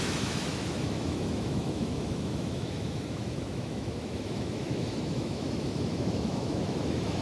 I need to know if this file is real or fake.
fake